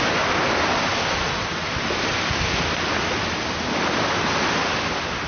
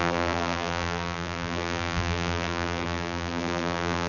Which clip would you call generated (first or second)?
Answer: second